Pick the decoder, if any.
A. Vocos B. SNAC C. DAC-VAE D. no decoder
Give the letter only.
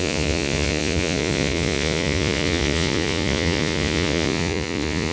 A